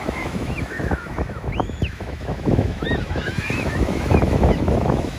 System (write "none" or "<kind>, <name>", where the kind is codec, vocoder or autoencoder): autoencoder, DAC-VAE